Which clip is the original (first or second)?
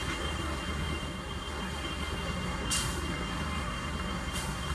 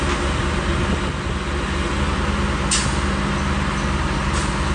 second